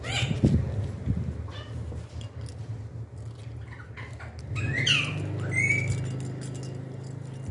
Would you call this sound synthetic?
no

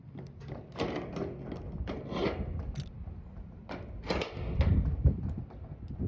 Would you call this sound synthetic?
no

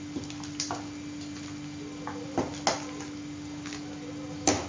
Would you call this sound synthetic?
no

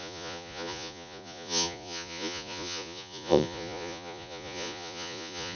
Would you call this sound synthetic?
yes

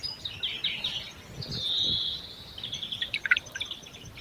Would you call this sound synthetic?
no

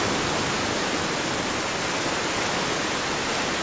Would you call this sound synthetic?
no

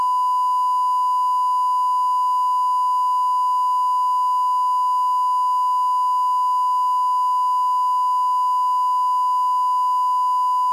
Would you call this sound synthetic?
yes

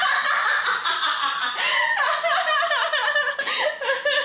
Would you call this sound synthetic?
no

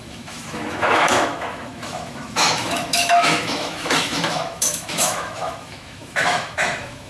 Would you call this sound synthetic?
yes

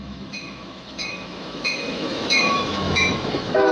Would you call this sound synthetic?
yes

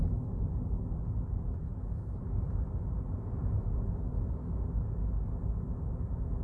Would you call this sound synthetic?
no